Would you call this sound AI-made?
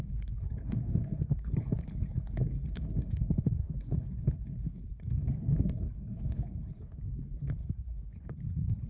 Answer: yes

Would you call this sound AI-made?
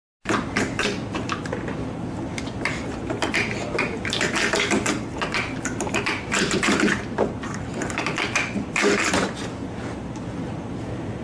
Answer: no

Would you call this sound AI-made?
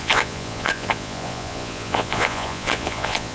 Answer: yes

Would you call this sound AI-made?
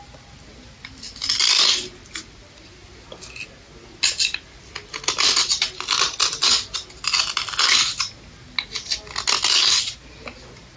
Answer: no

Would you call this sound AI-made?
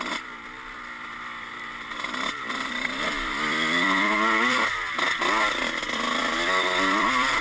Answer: yes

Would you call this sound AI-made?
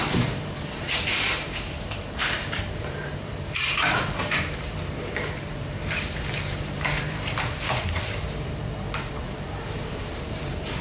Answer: yes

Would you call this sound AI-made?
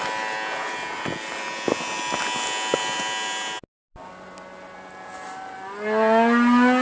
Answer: no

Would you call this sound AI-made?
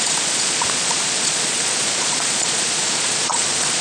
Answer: yes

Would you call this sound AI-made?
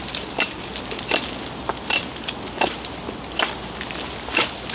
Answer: no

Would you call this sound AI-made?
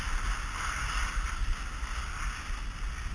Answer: no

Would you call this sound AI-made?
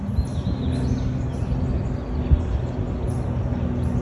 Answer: no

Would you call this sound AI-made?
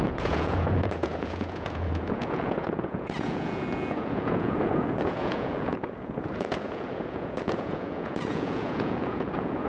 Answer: yes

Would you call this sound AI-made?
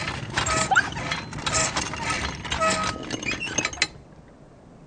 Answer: no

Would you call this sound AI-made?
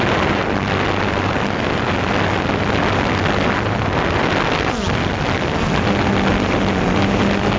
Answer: no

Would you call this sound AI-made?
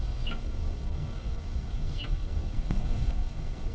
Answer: yes